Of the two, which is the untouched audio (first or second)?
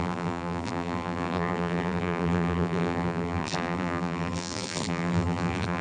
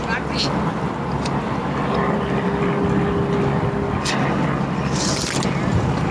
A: second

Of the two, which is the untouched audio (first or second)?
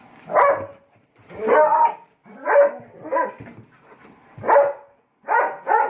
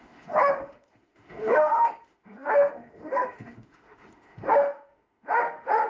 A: first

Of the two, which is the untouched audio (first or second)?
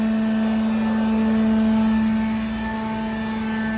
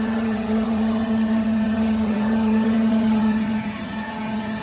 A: first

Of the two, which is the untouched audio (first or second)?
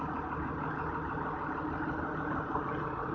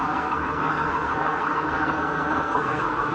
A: first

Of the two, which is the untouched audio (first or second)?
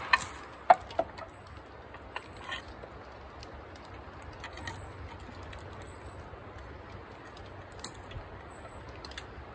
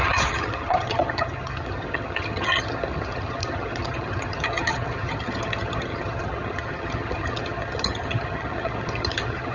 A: first